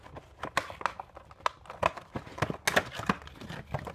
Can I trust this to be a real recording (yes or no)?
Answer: yes